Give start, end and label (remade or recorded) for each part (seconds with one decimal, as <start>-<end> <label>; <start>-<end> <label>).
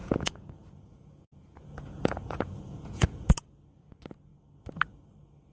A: 0.0-3.3 remade; 3.3-5.5 recorded